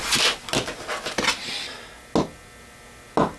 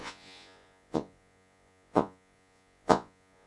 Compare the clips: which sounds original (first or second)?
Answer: first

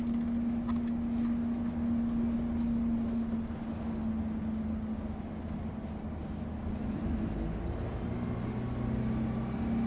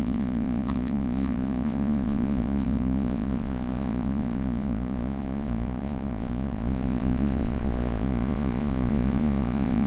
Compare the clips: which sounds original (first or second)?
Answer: first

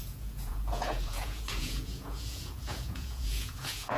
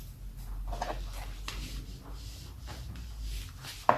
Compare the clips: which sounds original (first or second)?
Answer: second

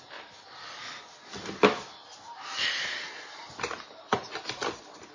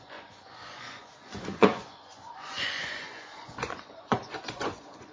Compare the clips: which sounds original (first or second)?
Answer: first